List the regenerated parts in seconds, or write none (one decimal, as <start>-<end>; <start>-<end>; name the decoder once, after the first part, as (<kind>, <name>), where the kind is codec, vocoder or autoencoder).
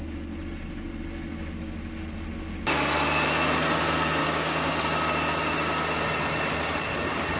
4.2-4.7 (codec, DAC)